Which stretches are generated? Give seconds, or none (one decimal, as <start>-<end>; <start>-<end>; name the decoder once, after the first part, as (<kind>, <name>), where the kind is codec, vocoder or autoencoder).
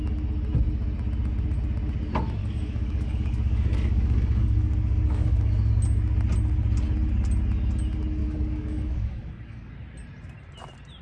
2.4-5.7 (codec, DAC); 8.2-9.7